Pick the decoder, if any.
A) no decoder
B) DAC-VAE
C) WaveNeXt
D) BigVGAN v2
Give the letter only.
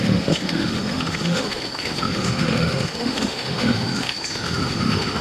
B